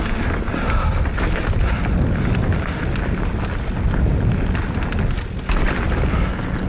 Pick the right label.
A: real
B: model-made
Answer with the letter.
A